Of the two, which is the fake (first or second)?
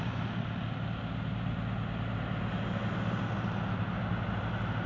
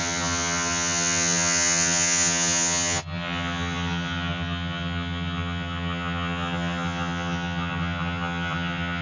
second